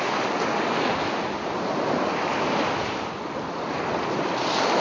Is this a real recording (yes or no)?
yes